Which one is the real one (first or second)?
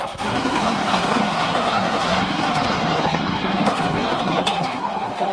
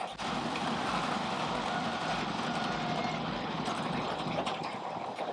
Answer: second